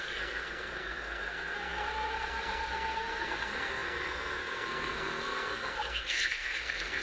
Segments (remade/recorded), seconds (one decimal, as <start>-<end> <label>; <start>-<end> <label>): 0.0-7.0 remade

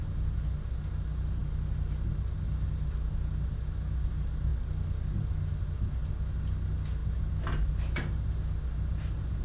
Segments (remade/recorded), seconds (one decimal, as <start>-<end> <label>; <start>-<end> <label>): 0.0-9.4 recorded

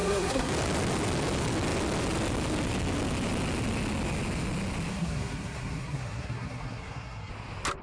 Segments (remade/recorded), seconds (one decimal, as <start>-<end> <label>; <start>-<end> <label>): 0.0-0.5 remade; 0.5-4.9 recorded; 4.9-7.3 remade; 7.3-7.8 recorded

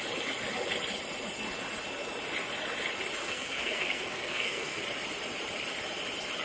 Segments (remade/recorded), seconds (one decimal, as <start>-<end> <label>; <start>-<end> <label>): 0.0-3.2 recorded; 3.2-4.8 remade; 4.8-6.4 recorded

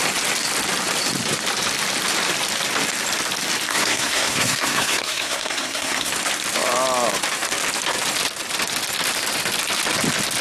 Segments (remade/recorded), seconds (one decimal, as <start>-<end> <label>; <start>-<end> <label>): 0.0-3.7 recorded; 3.7-6.1 remade; 6.1-10.4 recorded

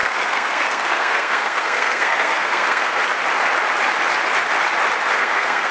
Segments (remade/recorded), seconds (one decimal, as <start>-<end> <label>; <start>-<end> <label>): 0.0-3.0 remade; 3.0-5.1 recorded; 5.1-5.7 remade